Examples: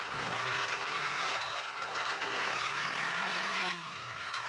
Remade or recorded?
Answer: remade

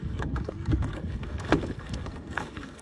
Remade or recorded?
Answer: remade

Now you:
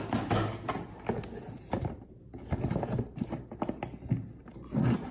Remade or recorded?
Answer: recorded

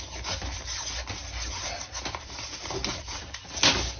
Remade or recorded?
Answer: recorded